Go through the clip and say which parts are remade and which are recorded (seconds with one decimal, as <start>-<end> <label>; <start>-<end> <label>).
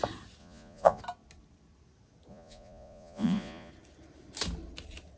0.0-0.4 recorded; 0.4-1.0 remade; 1.0-2.3 recorded; 2.3-3.7 remade; 3.7-5.2 recorded